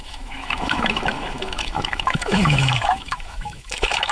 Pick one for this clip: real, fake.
fake